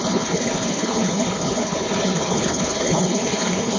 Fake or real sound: fake